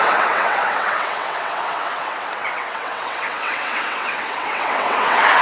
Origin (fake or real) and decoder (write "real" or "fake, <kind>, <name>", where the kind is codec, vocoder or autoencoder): fake, vocoder, WaveNeXt